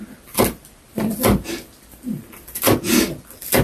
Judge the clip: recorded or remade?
recorded